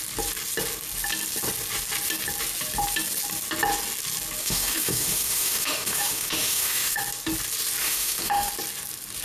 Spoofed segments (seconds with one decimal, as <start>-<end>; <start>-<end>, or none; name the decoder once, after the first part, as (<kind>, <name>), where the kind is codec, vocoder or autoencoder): 4.4-7.0 (autoencoder, DAC-VAE); 7.8-8.5